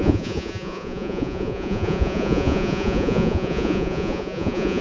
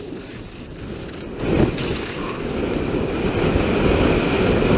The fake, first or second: first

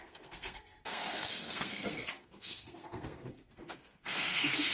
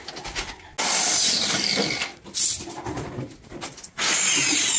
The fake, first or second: first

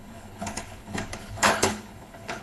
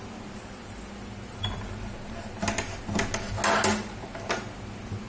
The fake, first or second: first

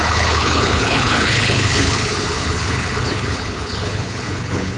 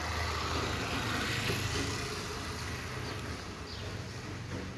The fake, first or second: first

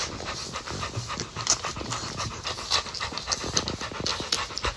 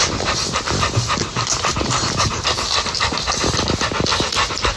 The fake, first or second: second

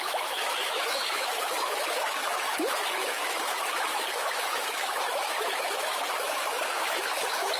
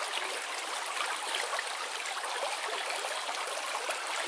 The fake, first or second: first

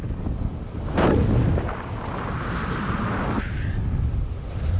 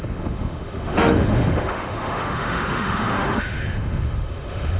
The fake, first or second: second